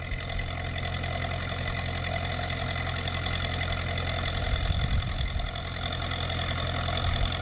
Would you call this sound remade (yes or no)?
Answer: no